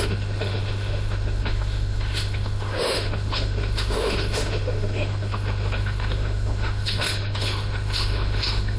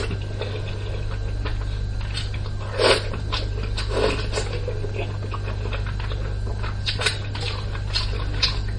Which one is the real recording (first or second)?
second